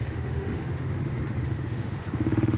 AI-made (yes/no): yes